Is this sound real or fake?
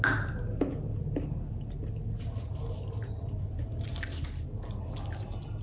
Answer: real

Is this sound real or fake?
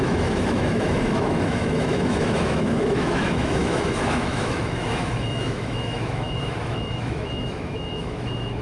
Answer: fake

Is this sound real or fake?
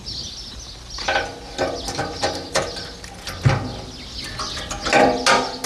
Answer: real